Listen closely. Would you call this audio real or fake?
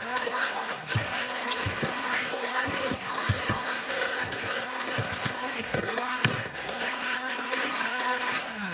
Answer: fake